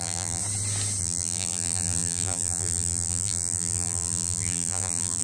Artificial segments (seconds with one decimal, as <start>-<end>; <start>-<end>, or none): 0.0-0.4; 1.0-5.2